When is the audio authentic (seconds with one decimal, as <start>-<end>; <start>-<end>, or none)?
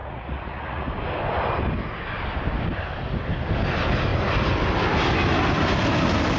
0.9-6.4